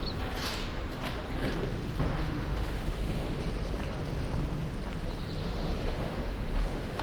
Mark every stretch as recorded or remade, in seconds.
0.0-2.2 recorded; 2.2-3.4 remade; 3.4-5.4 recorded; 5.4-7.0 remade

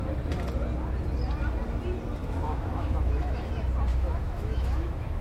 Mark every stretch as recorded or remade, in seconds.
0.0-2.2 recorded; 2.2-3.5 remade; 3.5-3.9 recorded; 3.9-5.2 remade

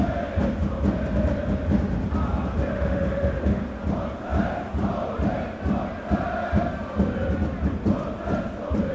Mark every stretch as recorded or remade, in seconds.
0.0-2.7 recorded; 2.7-3.6 remade; 3.6-8.9 recorded

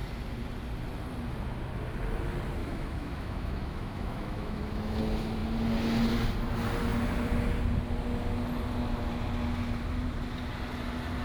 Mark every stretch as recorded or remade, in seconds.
0.0-2.6 recorded; 2.6-5.0 remade; 5.0-11.2 recorded

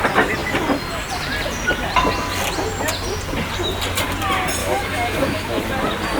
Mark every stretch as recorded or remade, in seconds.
0.0-4.6 recorded; 4.6-5.6 remade; 5.6-6.2 recorded

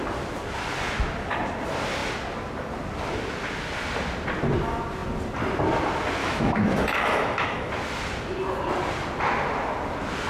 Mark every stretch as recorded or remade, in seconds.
0.0-6.2 recorded; 6.2-7.7 remade; 7.7-10.3 recorded

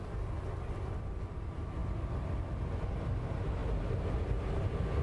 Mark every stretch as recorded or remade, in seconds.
0.0-5.0 recorded